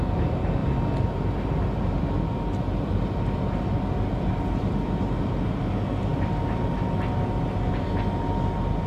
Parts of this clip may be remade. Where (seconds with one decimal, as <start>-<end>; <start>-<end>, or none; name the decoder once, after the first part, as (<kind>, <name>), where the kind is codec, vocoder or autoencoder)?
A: none